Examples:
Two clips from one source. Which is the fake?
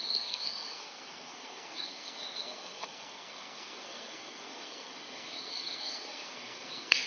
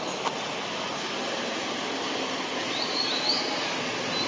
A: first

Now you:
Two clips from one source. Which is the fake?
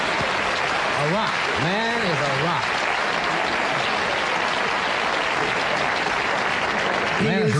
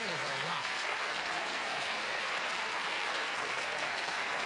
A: second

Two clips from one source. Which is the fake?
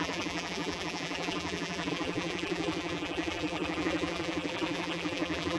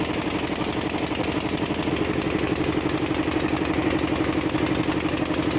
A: first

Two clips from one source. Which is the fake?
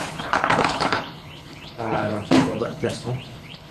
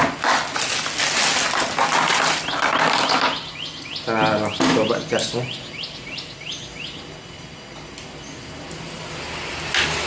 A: first